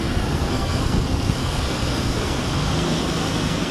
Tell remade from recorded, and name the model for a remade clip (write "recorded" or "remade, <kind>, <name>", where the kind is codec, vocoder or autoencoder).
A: remade, codec, SNAC